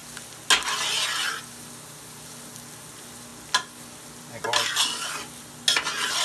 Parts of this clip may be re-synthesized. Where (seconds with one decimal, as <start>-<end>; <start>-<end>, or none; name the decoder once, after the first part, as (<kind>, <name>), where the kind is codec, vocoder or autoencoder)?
none